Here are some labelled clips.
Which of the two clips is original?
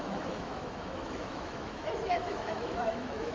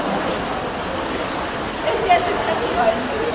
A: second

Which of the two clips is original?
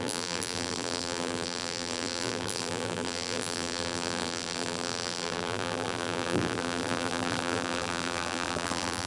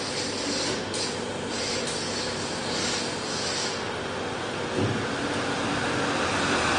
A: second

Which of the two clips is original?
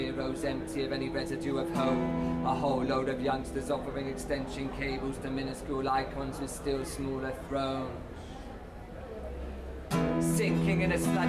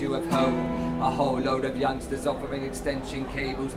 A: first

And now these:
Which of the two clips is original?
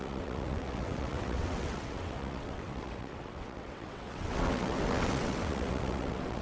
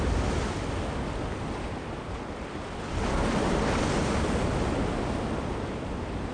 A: second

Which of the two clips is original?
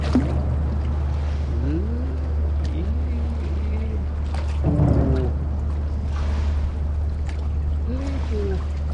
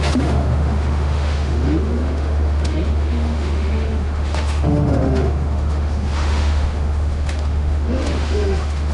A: first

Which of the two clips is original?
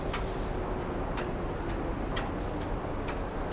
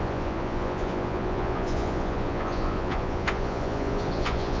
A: first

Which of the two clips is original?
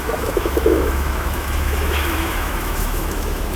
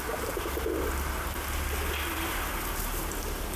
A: second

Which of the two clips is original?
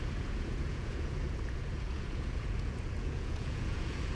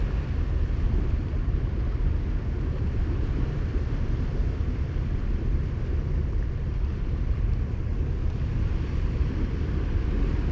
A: second